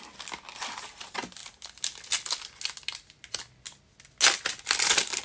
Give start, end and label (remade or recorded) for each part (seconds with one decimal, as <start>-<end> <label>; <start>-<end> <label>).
0.0-5.2 recorded